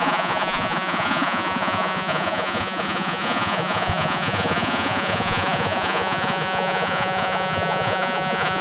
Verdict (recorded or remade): remade